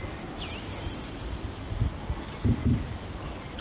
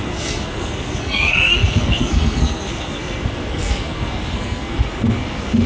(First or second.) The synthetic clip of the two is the second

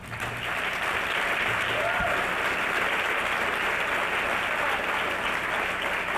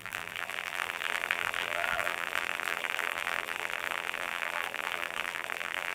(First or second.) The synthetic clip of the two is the second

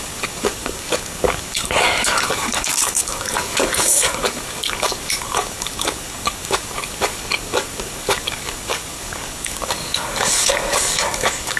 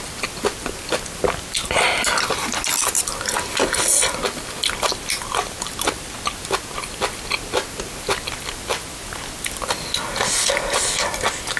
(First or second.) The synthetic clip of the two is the first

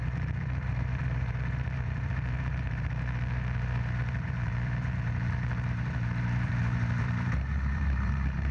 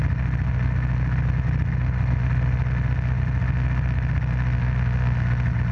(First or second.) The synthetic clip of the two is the first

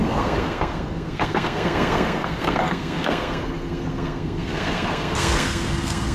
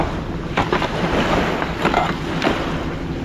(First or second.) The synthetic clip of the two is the first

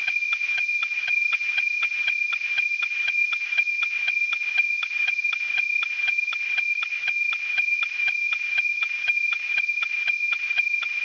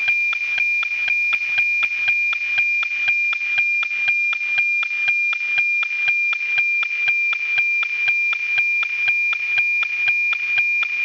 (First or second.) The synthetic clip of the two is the first